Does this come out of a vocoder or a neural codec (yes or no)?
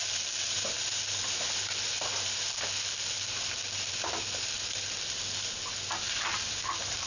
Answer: no